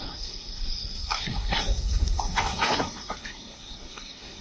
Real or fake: fake